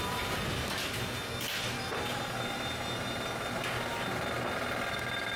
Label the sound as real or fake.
real